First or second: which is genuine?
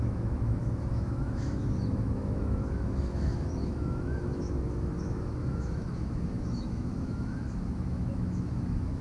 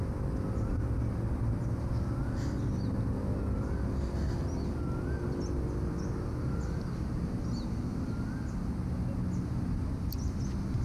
second